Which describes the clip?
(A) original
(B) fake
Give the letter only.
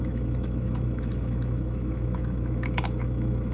B